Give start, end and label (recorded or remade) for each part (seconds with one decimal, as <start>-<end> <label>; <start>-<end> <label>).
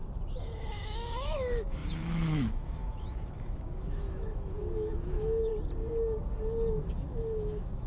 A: 0.0-0.7 recorded; 0.7-5.5 remade; 5.5-6.7 recorded; 6.7-7.9 remade